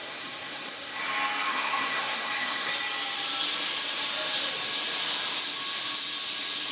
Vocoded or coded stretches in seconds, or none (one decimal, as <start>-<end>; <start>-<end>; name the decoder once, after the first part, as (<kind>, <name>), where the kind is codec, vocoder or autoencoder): 0.0-1.0 (codec, SNAC); 1.5-2.7